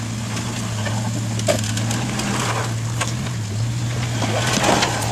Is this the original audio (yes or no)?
yes